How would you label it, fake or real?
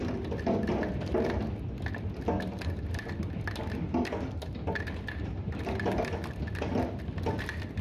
real